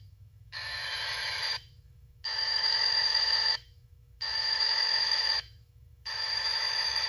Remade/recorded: remade